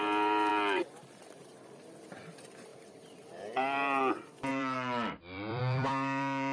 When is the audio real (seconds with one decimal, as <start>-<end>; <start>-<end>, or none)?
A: 0.5-1.0